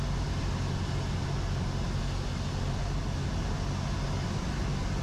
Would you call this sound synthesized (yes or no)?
no